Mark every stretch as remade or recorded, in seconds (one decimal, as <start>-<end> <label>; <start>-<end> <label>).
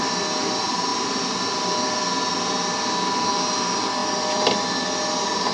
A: 0.0-5.5 recorded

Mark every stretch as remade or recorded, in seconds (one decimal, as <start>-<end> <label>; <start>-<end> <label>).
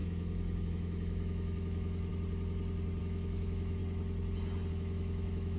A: 0.0-2.1 remade; 2.1-3.0 recorded; 3.0-3.8 remade; 3.8-4.7 recorded; 4.7-5.6 remade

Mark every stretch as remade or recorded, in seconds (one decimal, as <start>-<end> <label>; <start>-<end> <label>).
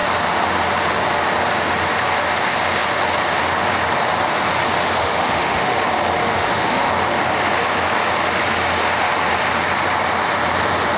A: 0.0-5.0 recorded; 5.0-5.8 remade; 5.8-6.2 recorded; 6.2-6.9 remade; 6.9-11.0 recorded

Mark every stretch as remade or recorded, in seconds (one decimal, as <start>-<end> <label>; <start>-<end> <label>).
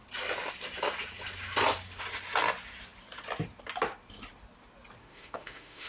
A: 0.0-5.0 recorded; 5.0-5.9 remade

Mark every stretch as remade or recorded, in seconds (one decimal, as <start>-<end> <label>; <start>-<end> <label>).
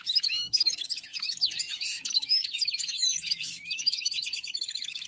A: 0.0-5.1 remade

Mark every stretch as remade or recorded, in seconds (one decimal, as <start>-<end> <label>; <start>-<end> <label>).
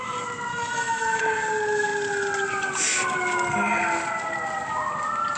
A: 0.0-0.5 recorded; 0.5-1.2 remade; 1.2-5.4 recorded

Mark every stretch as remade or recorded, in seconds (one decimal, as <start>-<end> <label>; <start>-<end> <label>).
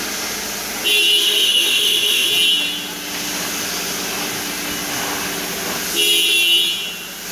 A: 0.0-1.2 recorded; 1.2-2.3 remade; 2.3-7.3 recorded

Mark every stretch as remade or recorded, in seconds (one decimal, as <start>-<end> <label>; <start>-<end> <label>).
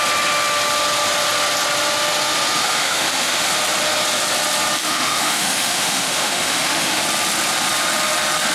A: 0.0-2.6 recorded; 2.6-3.5 remade; 3.5-4.8 recorded; 4.8-7.0 remade; 7.0-8.5 recorded